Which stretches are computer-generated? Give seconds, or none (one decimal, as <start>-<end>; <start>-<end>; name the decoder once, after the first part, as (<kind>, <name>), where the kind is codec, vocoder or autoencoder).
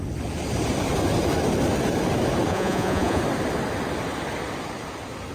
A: 2.5-3.2 (vocoder, Vocos)